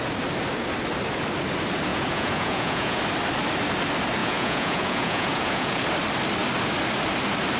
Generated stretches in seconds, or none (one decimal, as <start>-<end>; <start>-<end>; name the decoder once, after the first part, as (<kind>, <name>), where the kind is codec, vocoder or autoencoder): 1.9-3.0 (vocoder, Vocos); 4.2-5.8